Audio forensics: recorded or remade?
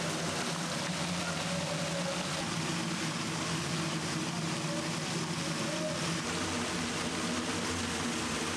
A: recorded